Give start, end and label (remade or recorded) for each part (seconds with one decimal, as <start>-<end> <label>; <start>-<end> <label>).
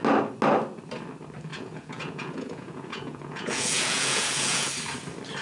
0.0-1.5 recorded; 1.5-4.7 remade; 4.7-5.4 recorded